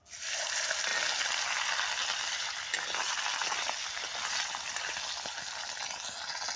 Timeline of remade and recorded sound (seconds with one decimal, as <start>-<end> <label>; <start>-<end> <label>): 0.0-6.6 recorded